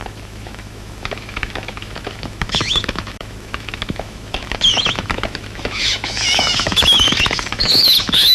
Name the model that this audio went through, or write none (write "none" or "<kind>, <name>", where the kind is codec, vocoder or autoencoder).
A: autoencoder, DAC-VAE